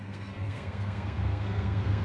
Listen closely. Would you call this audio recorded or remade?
remade